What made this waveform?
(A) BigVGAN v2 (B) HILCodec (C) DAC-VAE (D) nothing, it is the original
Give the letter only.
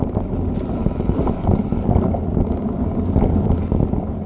D